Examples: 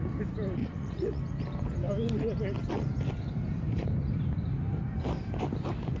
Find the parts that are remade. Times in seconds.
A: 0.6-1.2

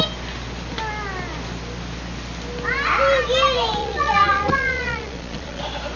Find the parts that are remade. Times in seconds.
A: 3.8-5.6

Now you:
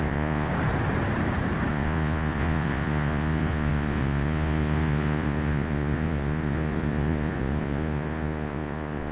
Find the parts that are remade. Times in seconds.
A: 0.0-0.5; 1.7-9.1

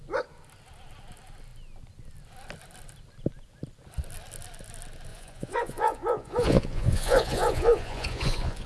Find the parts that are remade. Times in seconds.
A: 5.1-8.7